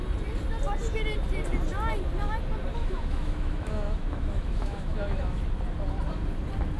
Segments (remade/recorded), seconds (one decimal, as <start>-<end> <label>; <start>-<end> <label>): 0.0-2.8 recorded; 2.8-5.4 remade; 5.4-6.8 recorded